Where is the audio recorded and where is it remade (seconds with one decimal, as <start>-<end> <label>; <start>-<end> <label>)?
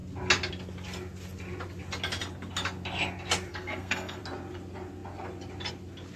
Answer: 0.0-3.5 recorded; 3.5-4.2 remade; 4.2-6.2 recorded